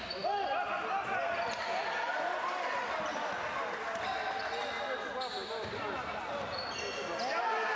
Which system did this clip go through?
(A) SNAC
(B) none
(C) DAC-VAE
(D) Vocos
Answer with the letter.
B